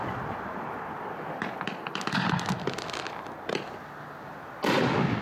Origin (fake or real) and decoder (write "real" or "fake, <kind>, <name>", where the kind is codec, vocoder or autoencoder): real